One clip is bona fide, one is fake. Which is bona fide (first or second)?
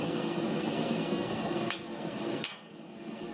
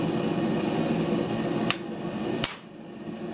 second